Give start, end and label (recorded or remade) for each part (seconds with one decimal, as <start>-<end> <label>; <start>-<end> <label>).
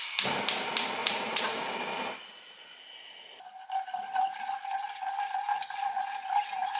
0.0-1.0 recorded; 1.0-1.7 remade; 1.7-6.8 recorded